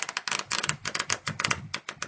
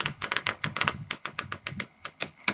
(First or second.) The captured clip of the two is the first